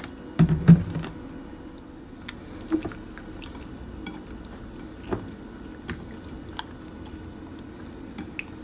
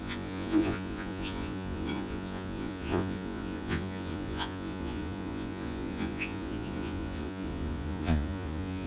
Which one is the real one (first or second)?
first